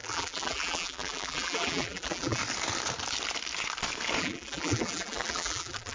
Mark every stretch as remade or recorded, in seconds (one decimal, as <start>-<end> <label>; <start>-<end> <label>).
0.0-2.4 remade; 2.4-4.2 recorded; 4.2-5.9 remade